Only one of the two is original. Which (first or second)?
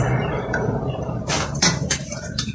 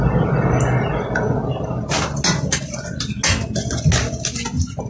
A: second